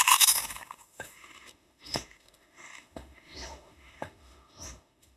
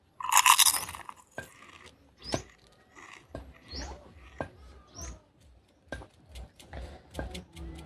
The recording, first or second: second